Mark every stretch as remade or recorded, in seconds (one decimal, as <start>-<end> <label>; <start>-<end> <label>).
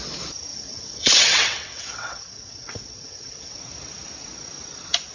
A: 0.0-0.5 recorded; 0.5-3.6 remade; 3.6-5.1 recorded